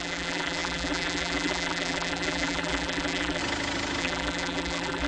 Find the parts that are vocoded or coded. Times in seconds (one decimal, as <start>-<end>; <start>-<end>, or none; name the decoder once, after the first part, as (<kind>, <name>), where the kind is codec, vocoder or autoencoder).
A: 0.0-3.4 (vocoder, BigVGAN v2); 4.0-5.1